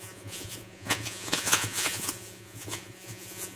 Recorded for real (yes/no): no